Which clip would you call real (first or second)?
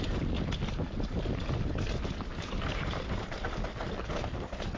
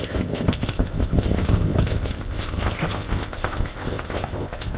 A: first